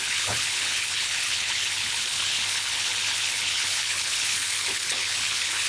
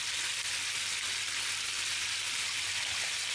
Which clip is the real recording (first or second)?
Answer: second